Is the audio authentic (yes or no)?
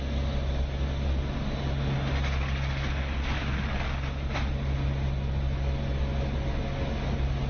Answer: yes